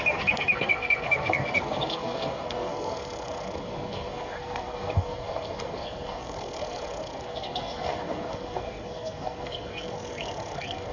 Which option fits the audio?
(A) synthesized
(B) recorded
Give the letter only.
A